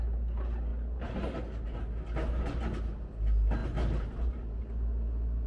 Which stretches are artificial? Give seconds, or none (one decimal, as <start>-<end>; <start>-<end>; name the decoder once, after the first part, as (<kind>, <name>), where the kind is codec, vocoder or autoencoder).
none